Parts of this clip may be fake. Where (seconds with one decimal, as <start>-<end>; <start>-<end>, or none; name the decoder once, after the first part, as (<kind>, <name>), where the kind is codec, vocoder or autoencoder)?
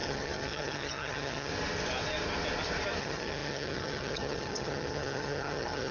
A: 0.0-1.5 (vocoder, HiFi-GAN); 3.0-5.9